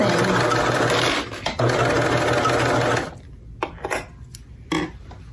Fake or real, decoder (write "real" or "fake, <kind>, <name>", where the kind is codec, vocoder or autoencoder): real